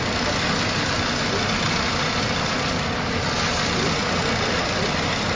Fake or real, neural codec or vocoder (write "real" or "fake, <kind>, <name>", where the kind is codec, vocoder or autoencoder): real